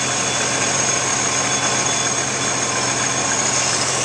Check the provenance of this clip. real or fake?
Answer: real